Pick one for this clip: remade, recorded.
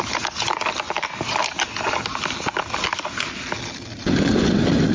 recorded